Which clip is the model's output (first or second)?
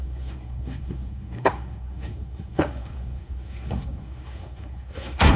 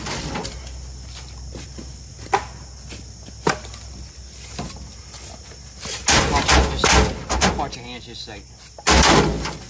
first